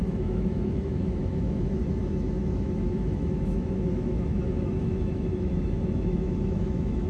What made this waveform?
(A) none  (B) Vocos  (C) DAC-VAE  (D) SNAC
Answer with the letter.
C